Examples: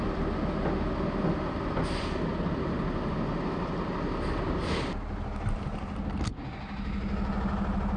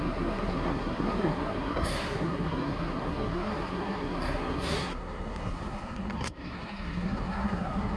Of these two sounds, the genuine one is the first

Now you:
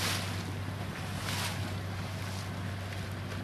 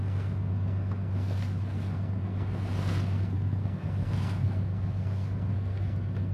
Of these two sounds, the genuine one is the first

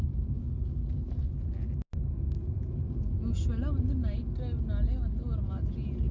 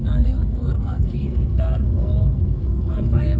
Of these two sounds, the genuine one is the first